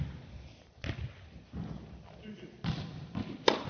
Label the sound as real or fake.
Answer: real